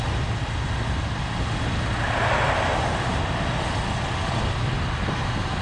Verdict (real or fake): real